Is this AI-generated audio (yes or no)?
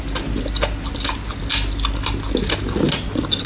no